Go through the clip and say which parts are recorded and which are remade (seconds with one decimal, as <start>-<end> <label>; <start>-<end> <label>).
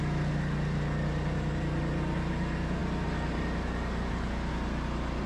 0.0-5.3 recorded